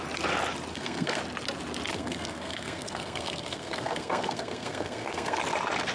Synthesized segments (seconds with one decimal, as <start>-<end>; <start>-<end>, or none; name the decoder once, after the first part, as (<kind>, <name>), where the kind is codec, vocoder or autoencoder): 0.7-1.2 (codec, SNAC); 1.9-5.4